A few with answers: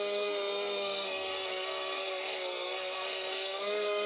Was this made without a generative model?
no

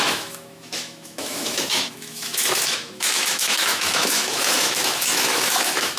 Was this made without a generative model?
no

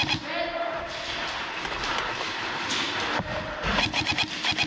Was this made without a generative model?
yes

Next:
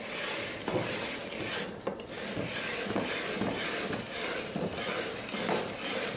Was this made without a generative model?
yes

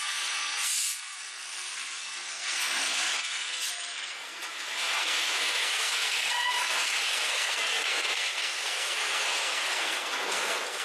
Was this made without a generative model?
no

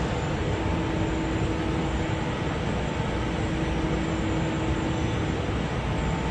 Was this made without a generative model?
yes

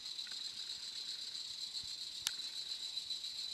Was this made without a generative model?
yes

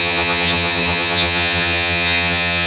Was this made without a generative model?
no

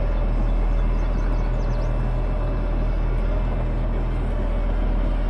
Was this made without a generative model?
yes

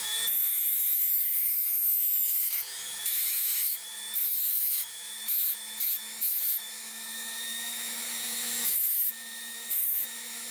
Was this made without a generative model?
no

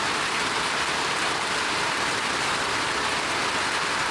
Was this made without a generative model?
yes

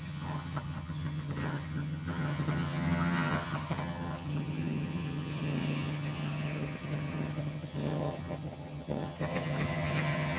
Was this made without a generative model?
no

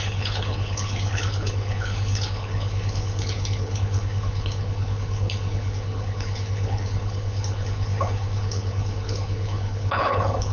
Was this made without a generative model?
no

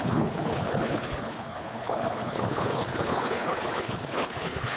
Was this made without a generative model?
no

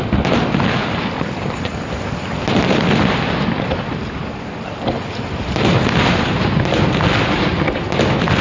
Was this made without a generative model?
yes